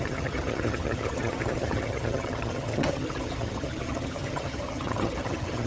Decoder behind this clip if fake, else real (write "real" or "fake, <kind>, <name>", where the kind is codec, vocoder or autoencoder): fake, vocoder, HiFi-GAN